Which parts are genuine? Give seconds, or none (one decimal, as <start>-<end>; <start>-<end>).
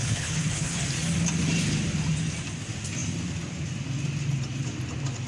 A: 0.8-5.3